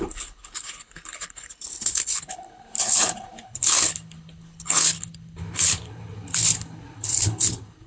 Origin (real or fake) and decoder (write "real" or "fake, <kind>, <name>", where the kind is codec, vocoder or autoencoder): fake, codec, HILCodec